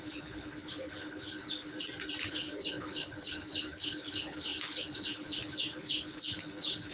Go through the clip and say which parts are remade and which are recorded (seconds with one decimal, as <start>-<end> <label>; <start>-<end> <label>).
0.0-1.7 remade; 1.7-2.2 recorded; 2.2-6.9 remade